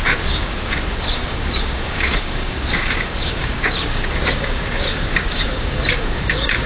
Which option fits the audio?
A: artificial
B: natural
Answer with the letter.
A